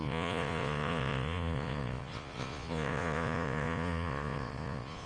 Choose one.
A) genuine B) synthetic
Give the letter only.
B